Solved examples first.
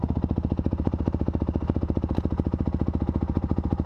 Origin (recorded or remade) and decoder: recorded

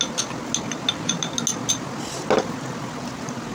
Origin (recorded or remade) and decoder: recorded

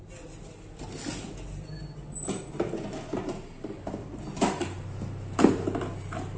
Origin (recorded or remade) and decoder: recorded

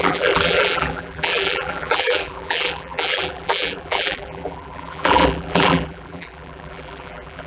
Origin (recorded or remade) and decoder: remade, vocoder, BigVGAN v2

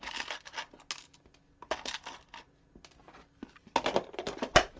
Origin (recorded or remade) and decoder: recorded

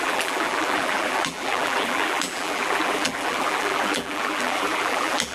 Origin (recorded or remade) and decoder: remade, vocoder, BigVGAN v2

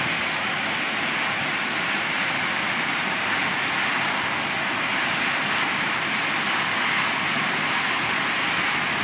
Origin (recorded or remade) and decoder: recorded